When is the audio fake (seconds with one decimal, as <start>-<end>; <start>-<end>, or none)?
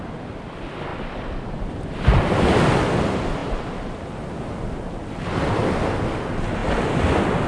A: 0.9-1.9; 3.4-4.0